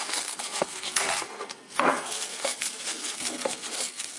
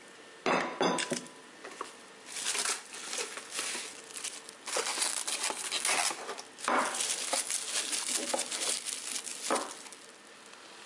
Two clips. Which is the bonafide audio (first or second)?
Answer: second